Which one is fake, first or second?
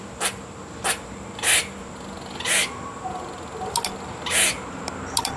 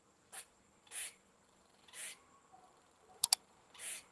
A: second